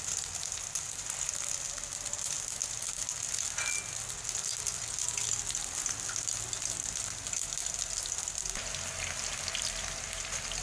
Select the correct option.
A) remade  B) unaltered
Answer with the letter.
B